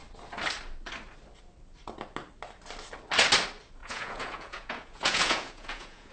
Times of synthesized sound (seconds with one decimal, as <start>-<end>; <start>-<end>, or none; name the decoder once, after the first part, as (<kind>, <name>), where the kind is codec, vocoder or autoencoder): 3.8-6.1 (vocoder, Vocos)

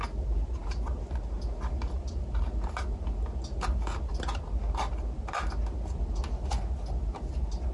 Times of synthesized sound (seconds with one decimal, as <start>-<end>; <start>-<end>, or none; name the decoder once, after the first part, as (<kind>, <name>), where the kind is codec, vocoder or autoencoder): none

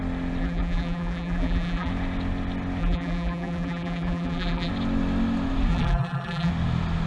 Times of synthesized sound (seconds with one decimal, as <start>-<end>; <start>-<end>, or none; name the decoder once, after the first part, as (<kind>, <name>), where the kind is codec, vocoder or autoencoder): 0.4-1.9 (vocoder, BigVGAN v2); 2.8-4.7; 5.7-6.5

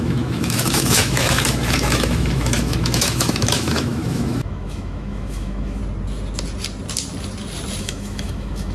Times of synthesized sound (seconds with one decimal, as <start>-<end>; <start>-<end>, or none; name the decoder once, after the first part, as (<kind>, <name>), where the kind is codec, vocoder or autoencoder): 0.0-5.8 (autoencoder, DAC-VAE); 7.8-8.7

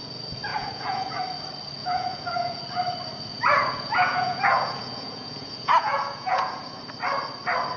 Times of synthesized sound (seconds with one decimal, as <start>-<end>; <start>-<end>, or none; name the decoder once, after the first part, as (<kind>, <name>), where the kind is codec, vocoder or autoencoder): 0.5-1.2 (vocoder, Vocos); 1.8-2.6; 3.3-6.8

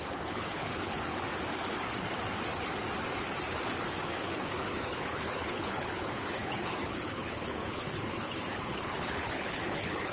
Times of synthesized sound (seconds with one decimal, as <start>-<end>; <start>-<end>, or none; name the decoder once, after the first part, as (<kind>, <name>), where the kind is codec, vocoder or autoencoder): 0.0-1.1 (codec, HILCodec); 4.1-10.1

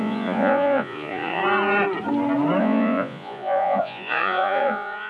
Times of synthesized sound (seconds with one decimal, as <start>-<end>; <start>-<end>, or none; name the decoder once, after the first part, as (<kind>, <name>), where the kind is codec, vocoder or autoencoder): 0.0-1.4 (vocoder, Vocos); 2.6-5.1

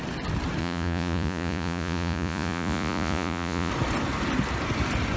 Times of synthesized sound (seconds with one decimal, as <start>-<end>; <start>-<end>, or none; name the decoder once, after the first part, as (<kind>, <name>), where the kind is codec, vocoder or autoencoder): 0.6-3.7 (vocoder, Vocos)